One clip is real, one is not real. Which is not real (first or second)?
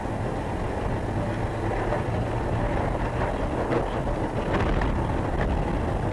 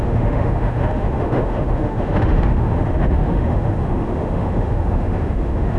second